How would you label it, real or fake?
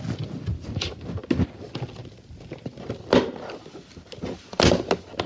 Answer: real